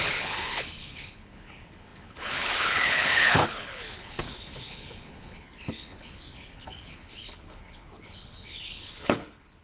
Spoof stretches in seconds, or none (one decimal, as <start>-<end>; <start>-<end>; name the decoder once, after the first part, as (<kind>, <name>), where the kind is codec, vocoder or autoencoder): 0.0-9.6 (codec, HILCodec)